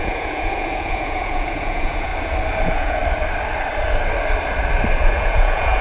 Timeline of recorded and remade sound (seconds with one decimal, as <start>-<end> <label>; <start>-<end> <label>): 0.0-2.1 remade; 2.1-2.6 recorded; 2.6-3.0 remade; 3.0-5.0 recorded; 5.0-5.8 remade

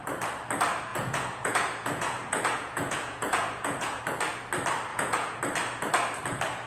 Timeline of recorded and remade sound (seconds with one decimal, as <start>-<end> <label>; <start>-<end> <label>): 0.0-0.9 recorded; 0.9-4.0 remade; 4.0-4.9 recorded; 4.9-5.4 remade; 5.4-6.7 recorded

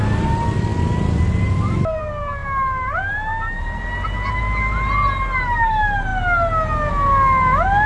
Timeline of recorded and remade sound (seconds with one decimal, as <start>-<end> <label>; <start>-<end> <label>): 0.0-7.9 recorded

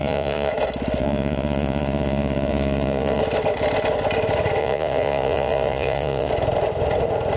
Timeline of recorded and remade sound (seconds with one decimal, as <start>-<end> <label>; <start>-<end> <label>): 0.0-0.5 remade; 0.5-1.0 recorded; 1.0-3.2 remade; 3.2-4.6 recorded; 4.6-6.3 remade; 6.3-7.4 recorded

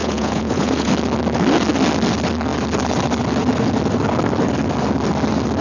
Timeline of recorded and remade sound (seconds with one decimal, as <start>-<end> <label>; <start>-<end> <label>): 0.0-0.9 remade; 0.9-5.6 recorded

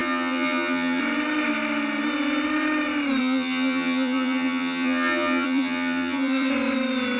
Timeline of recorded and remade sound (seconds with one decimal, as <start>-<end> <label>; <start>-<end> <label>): 0.0-1.0 remade; 1.0-3.2 recorded; 3.2-6.5 remade; 6.5-7.2 recorded

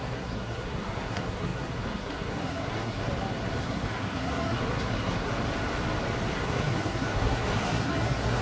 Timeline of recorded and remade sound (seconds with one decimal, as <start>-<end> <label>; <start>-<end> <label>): 0.0-3.0 remade; 3.0-3.6 recorded; 3.6-5.3 remade; 5.3-6.3 recorded; 6.3-8.4 remade